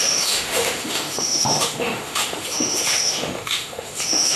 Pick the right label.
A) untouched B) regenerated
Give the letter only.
B